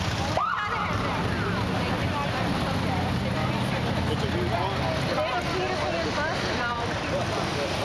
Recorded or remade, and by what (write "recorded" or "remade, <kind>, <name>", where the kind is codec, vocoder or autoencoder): recorded